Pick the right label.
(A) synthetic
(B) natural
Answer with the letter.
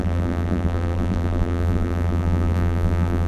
A